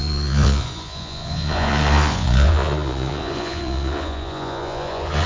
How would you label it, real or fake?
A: fake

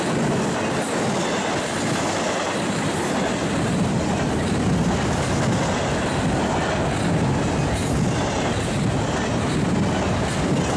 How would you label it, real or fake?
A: real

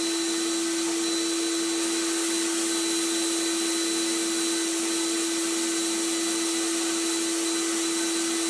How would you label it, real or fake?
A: real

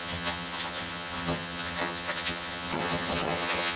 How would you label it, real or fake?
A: fake